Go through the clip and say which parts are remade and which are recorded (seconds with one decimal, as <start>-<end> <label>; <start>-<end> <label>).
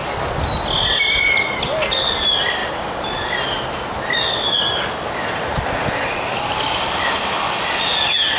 0.0-8.4 recorded